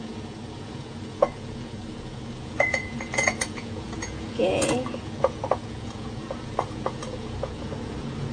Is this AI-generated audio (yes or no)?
yes